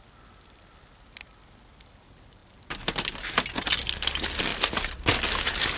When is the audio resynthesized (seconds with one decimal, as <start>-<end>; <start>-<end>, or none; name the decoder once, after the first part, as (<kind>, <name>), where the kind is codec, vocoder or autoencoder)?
none